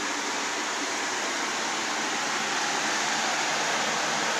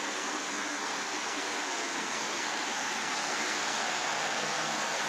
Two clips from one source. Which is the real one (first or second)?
first